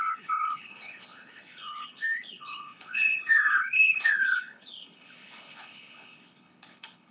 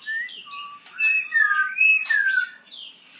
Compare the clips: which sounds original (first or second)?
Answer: second